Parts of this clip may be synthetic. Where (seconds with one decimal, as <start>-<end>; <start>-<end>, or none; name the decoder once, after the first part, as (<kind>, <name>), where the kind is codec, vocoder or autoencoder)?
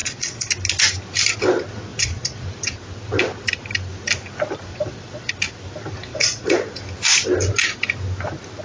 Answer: 0.0-0.5 (vocoder, Vocos); 1.9-2.5; 4.7-5.3; 6.1-6.7